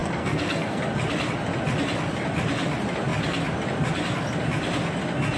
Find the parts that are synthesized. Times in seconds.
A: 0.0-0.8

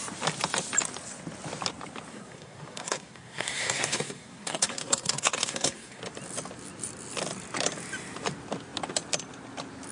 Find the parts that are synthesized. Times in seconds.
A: 2.1-6.0

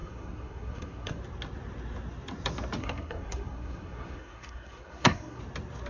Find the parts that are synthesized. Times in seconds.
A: 0.0-1.2; 2.8-5.4

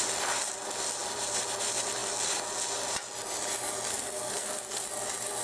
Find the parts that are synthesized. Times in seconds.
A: 3.9-4.9

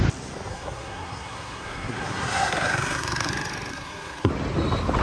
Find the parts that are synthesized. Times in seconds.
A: 0.5-3.3; 3.7-4.3

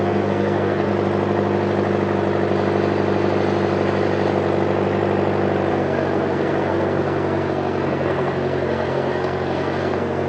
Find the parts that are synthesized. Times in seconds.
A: 0.0-0.9; 5.7-10.3

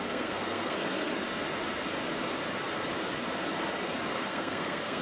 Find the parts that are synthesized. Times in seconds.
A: 0.0-1.1; 4.1-5.0

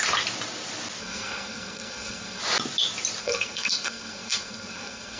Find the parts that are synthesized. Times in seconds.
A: 1.0-2.4; 3.2-5.2